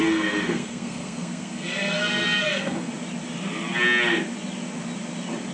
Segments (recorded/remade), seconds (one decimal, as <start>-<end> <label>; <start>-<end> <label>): 0.0-2.9 remade; 2.9-5.5 recorded